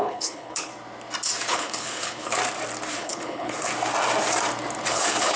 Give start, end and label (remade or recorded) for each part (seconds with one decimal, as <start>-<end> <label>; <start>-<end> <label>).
0.0-0.7 remade; 0.7-1.5 recorded; 1.5-2.4 remade; 2.4-2.9 recorded; 2.9-3.7 remade; 3.7-4.9 recorded; 4.9-5.4 remade

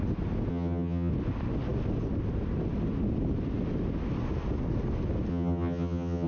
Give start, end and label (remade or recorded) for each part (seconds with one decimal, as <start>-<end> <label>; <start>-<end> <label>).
0.0-0.5 recorded; 0.5-1.1 remade; 1.1-5.3 recorded; 5.3-6.3 remade